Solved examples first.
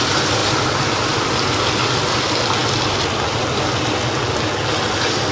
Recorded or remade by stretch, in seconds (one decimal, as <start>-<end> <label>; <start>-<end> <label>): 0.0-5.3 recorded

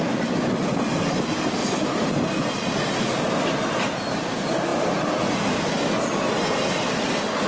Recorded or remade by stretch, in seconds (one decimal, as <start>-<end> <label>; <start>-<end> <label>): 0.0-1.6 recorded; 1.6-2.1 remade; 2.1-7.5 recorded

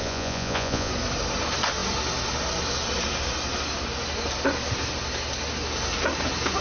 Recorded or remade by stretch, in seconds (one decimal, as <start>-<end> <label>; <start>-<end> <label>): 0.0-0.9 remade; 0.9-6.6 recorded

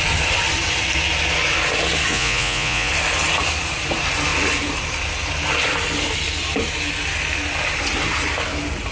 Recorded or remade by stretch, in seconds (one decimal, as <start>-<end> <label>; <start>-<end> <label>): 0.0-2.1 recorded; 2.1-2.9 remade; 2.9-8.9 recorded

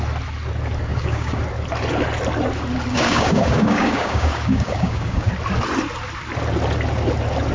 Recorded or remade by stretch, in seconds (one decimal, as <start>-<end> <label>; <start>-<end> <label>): 0.0-0.9 recorded; 0.9-1.4 remade; 1.4-2.9 recorded; 2.9-5.3 remade; 5.3-7.5 recorded